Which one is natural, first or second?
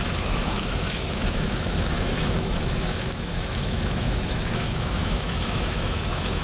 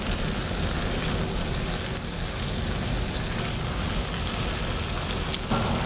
second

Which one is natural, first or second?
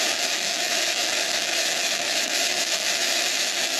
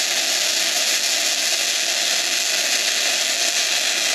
second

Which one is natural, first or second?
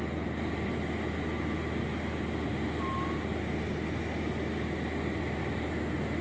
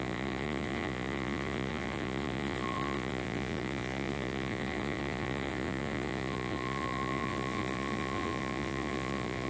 first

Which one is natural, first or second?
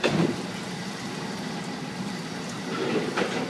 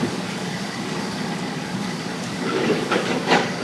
first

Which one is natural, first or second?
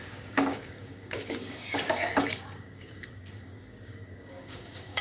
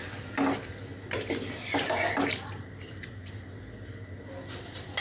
second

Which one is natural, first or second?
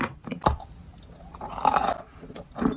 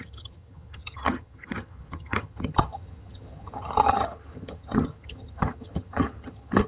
first